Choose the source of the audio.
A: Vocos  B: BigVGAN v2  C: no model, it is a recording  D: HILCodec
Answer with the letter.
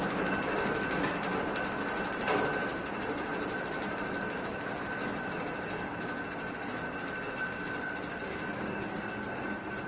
C